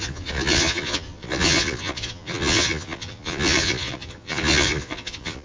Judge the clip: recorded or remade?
remade